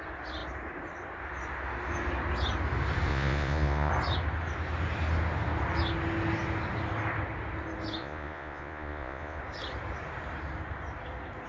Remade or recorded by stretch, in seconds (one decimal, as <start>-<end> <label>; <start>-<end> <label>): 0.0-3.1 recorded; 3.1-3.9 remade; 3.9-8.0 recorded; 8.0-9.4 remade; 9.4-11.5 recorded